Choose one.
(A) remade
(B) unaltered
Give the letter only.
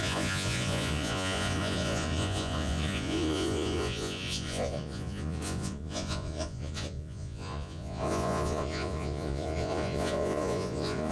A